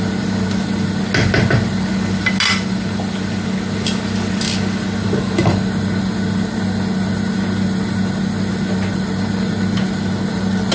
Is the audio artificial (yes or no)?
no